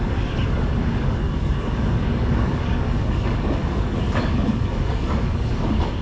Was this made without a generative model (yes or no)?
no